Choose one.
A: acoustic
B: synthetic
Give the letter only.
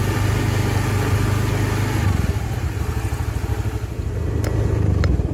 A